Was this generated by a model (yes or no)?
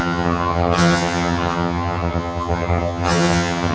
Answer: yes